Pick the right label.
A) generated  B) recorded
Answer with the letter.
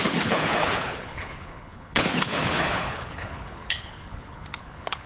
A